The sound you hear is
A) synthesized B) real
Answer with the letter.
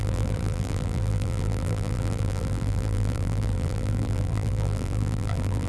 A